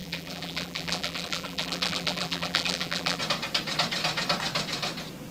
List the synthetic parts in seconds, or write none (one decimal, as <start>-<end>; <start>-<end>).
0.0-3.2